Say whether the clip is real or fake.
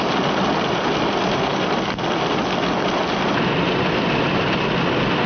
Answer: real